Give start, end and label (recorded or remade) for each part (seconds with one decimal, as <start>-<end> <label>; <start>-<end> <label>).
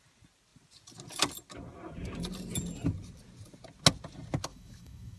0.0-4.5 recorded; 4.5-5.2 remade